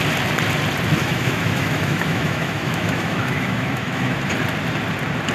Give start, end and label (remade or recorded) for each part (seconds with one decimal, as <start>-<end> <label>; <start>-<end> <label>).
0.0-1.0 recorded; 1.0-4.2 remade; 4.2-5.3 recorded